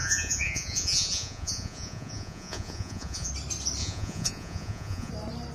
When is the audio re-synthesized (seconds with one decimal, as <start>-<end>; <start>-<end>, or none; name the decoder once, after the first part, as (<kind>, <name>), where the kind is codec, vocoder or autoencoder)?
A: 0.0-3.3 (vocoder, Vocos); 3.8-5.1